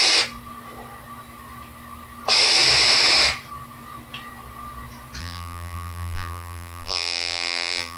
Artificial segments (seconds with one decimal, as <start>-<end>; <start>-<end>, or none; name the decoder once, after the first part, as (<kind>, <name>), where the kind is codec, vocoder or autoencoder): 5.2-8.0 (vocoder, BigVGAN v2)